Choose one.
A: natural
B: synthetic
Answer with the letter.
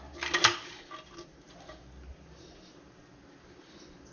A